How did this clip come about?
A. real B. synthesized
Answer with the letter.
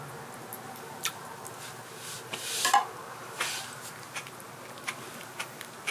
A